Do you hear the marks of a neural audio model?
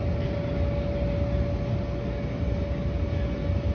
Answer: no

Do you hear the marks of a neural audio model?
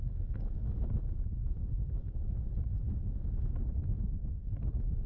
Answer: no